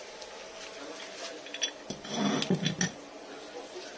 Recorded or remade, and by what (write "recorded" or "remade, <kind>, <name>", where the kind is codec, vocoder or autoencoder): recorded